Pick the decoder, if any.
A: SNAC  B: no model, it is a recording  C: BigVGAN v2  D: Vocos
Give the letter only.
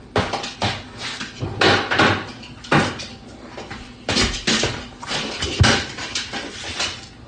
B